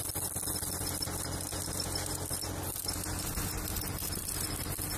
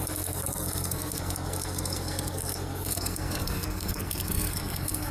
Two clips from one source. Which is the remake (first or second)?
second